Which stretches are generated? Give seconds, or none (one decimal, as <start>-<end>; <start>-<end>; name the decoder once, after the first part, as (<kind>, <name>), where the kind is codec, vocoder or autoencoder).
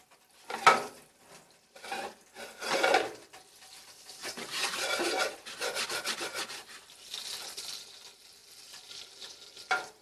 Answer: 4.2-5.2 (vocoder, BigVGAN v2)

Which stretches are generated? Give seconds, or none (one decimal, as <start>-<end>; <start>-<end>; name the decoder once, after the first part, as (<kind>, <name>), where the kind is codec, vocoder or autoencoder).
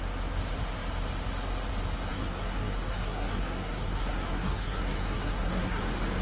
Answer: 2.1-5.8 (codec, SNAC)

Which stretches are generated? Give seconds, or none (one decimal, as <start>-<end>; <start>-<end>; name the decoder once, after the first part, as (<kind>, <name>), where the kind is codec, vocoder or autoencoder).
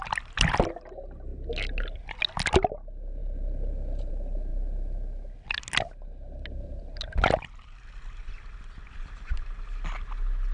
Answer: none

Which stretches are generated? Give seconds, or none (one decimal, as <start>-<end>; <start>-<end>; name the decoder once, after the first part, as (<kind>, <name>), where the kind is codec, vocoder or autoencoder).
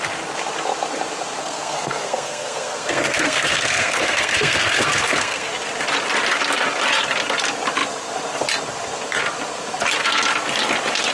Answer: 1.4-5.5 (codec, SNAC)